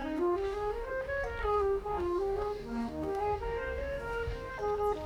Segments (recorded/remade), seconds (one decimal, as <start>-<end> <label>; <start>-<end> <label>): 0.0-0.9 remade; 0.9-1.4 recorded; 1.4-4.5 remade; 4.5-5.1 recorded